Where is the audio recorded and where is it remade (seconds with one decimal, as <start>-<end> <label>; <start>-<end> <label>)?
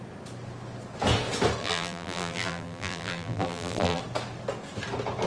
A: 0.0-1.6 recorded; 1.6-4.0 remade; 4.0-5.3 recorded